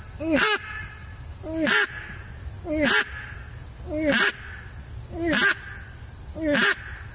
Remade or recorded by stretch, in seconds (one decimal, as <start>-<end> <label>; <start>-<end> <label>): 0.0-7.1 recorded